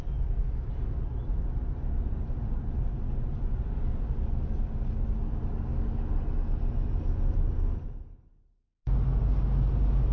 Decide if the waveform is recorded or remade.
recorded